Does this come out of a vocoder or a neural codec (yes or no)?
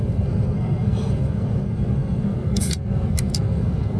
yes